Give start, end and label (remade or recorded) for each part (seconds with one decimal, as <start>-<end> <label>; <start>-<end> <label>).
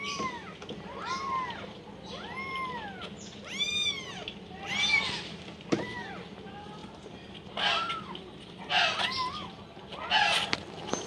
0.0-6.8 recorded; 6.8-7.3 remade; 7.3-11.1 recorded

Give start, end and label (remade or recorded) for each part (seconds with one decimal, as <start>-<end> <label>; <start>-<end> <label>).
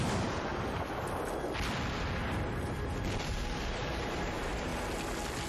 0.0-0.5 remade; 0.5-3.8 recorded; 3.8-4.7 remade; 4.7-5.5 recorded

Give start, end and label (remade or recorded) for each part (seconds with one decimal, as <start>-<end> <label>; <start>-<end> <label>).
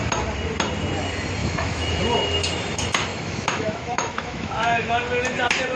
0.0-1.4 recorded; 1.4-2.0 remade; 2.0-3.1 recorded; 3.1-4.9 remade; 4.9-5.8 recorded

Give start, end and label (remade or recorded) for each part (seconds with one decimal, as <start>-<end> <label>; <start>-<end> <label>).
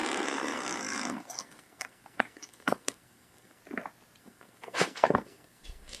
0.0-3.6 remade; 3.6-4.2 recorded; 4.2-6.0 remade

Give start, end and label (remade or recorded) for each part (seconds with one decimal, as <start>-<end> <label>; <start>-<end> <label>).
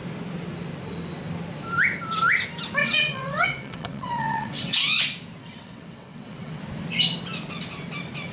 0.0-2.8 recorded; 2.8-5.0 remade; 5.0-5.4 recorded; 5.4-6.6 remade; 6.6-8.3 recorded